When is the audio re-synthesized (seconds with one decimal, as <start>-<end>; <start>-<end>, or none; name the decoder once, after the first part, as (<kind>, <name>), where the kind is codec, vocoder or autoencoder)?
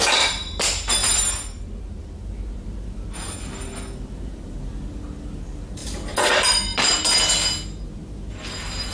none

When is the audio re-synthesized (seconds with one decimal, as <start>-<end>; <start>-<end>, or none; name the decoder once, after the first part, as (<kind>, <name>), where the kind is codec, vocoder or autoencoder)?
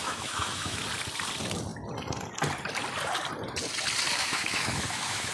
0.0-0.8 (autoencoder, DAC-VAE); 4.1-5.3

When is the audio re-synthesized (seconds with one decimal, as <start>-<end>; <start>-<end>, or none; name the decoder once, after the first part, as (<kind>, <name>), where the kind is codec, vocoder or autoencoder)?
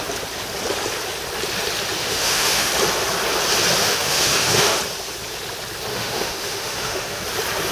2.0-2.7 (autoencoder, DAC-VAE); 3.8-4.8; 5.9-7.2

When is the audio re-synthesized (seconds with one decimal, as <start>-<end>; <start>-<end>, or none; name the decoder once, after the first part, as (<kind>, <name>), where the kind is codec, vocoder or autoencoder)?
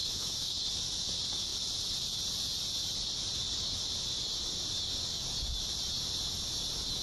0.0-0.6 (autoencoder, DAC-VAE)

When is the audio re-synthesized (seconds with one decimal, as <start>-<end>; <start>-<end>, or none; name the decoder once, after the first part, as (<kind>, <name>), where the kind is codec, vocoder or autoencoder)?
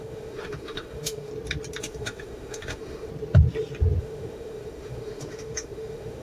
0.0-1.3 (autoencoder, DAC-VAE); 1.8-3.1; 4.0-6.2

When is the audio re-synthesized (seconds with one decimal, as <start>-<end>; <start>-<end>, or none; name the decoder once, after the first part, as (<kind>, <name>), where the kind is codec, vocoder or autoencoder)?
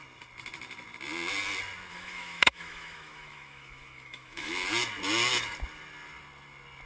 1.9-4.5 (autoencoder, DAC-VAE)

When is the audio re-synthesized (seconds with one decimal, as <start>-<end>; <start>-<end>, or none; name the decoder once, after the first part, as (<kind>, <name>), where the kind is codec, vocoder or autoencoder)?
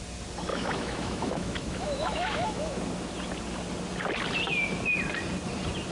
0.5-2.8 (autoencoder, DAC-VAE)